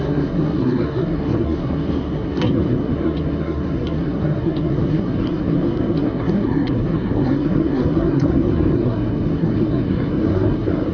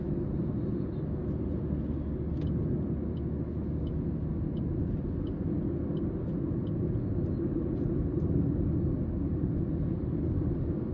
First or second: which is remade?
first